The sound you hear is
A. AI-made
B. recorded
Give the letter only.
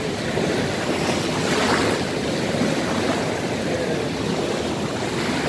B